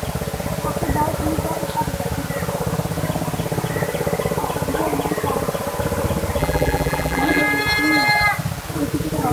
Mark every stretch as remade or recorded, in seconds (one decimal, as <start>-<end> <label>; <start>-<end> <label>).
0.0-6.4 recorded; 6.4-7.4 remade; 7.4-9.3 recorded